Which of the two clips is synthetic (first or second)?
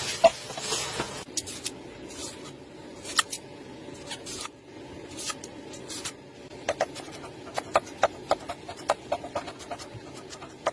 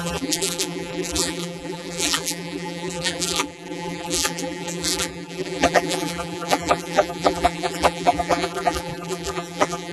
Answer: second